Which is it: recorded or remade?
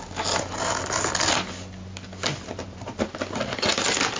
recorded